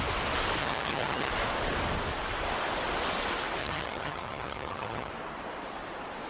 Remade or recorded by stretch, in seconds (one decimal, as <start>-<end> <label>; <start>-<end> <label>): 0.0-0.6 recorded; 0.6-1.3 remade; 1.3-3.6 recorded; 3.6-5.1 remade; 5.1-6.3 recorded